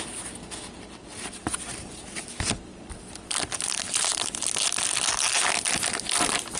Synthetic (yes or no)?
no